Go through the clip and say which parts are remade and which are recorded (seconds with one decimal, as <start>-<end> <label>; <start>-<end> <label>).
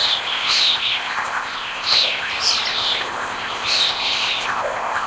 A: 0.0-2.3 remade; 2.3-2.7 recorded; 2.7-5.1 remade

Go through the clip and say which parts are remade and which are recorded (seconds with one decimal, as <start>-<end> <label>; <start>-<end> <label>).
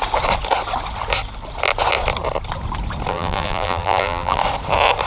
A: 0.0-3.1 recorded; 3.1-4.4 remade; 4.4-5.1 recorded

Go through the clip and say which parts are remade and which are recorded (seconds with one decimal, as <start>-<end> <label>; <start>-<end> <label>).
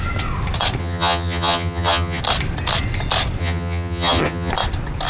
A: 0.0-0.8 recorded; 0.8-2.2 remade; 2.2-3.4 recorded; 3.4-4.5 remade; 4.5-5.1 recorded